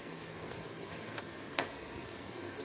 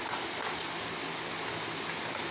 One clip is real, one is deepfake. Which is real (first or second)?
second